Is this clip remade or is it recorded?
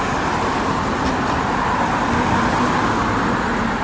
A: recorded